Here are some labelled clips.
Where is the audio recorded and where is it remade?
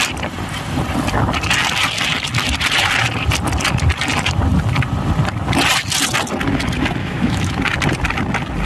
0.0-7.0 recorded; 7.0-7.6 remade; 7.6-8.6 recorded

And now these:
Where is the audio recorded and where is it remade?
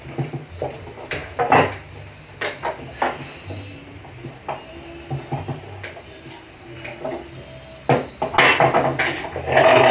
0.0-9.9 recorded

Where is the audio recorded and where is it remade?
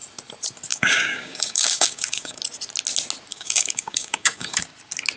0.0-0.7 recorded; 0.7-2.4 remade; 2.4-3.3 recorded; 3.3-4.6 remade; 4.6-5.2 recorded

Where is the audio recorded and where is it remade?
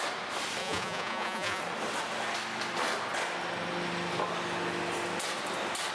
0.0-0.6 recorded; 0.6-1.6 remade; 1.6-5.9 recorded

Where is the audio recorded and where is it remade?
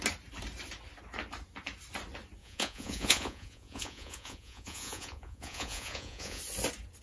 0.0-2.4 recorded; 2.4-6.4 remade; 6.4-7.0 recorded